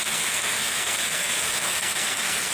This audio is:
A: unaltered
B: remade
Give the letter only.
B